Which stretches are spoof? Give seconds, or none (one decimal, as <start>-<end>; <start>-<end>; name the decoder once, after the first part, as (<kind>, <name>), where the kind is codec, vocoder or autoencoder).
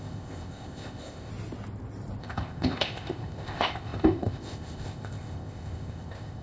0.0-1.3 (codec, ZipCodec); 2.2-6.4